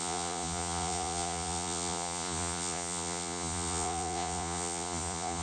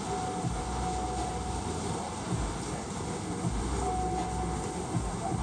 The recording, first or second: second